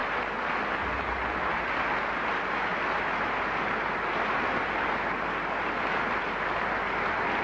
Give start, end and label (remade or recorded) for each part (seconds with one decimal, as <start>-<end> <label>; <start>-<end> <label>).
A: 0.0-7.4 recorded